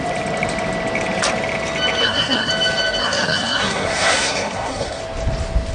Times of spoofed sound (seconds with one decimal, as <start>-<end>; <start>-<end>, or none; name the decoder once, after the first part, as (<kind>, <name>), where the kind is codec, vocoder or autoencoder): 2.0-2.5 (codec, SNAC); 3.0-5.0